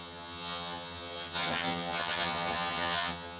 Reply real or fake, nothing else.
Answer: fake